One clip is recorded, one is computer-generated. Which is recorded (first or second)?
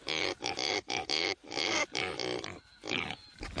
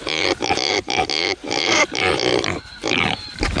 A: first